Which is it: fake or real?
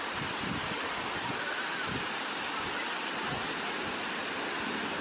real